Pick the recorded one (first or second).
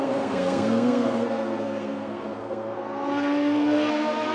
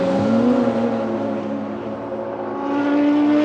second